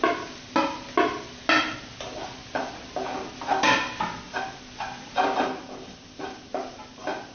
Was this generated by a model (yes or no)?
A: no